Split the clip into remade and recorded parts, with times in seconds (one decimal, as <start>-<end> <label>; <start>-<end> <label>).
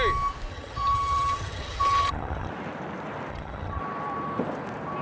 0.0-0.5 recorded; 0.5-2.5 remade; 2.5-3.3 recorded; 3.3-3.8 remade; 3.8-5.0 recorded